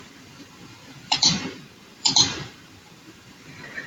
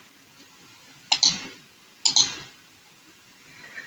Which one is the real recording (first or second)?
second